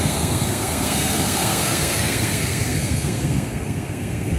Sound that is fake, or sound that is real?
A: fake